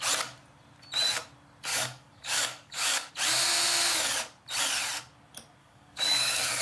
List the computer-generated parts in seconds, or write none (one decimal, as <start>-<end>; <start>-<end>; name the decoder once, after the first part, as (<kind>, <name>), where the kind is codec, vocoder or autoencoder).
1.7-3.1 (codec, DAC); 5.6-6.6